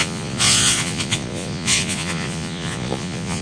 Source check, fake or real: fake